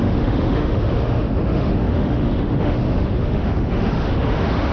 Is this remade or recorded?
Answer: remade